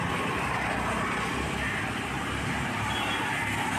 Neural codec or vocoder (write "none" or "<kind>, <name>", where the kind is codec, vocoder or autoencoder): none